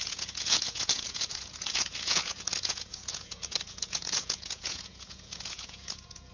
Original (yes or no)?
no